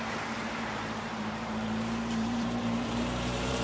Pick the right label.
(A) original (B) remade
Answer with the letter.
B